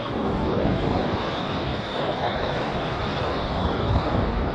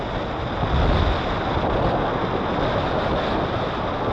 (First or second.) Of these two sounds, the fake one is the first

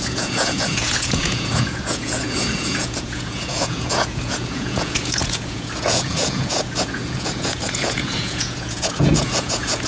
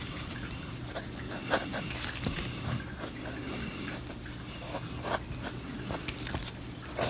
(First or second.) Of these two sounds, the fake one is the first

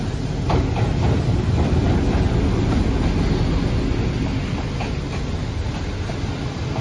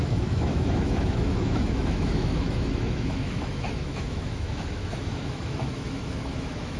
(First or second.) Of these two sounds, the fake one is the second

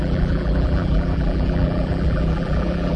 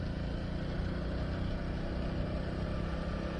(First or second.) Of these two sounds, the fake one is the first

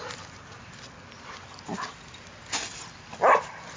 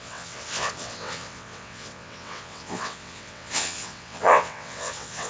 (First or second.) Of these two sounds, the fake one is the second